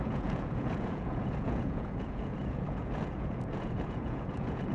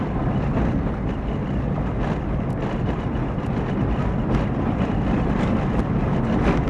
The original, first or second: second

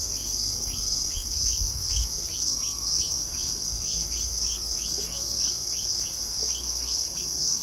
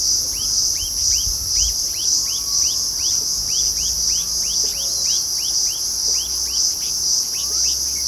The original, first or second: second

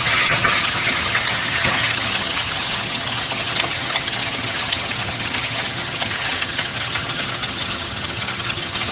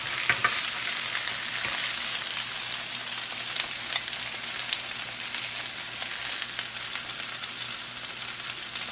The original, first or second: second